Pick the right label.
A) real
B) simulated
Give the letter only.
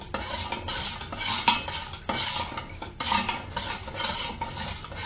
A